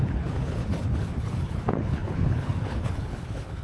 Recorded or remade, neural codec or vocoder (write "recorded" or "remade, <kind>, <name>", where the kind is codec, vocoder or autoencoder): remade, codec, HILCodec